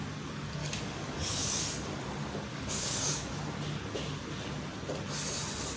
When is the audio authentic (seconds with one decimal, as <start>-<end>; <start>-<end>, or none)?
0.0-0.6; 1.6-2.5; 3.3-5.8